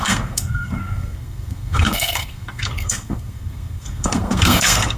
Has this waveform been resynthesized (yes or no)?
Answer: yes